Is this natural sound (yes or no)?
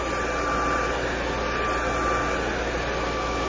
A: yes